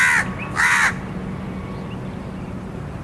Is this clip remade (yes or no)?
no